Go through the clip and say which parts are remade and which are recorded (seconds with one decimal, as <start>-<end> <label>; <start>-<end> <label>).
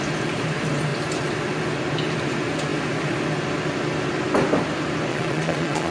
0.0-5.1 recorded; 5.1-5.9 remade